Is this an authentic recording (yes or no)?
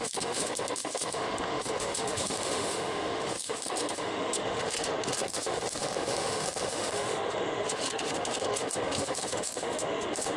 no